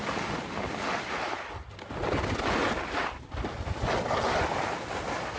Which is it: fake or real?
real